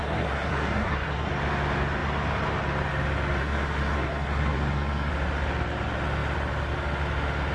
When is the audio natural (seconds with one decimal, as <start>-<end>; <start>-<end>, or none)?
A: 1.3-3.4; 5.1-7.5

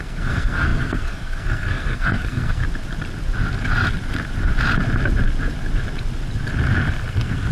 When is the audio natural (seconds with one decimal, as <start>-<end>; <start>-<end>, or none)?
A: 2.6-7.1

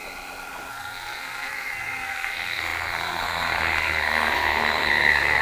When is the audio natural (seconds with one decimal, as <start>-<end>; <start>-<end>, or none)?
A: 0.0-0.7

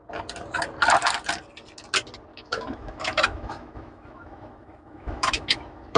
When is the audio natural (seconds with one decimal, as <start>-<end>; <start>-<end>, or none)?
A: 0.0-2.3